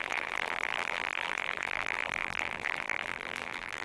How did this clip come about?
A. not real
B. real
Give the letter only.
A